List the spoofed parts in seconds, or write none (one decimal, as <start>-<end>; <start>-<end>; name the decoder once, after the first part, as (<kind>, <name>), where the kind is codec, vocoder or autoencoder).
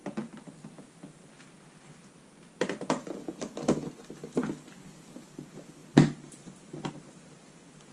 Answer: none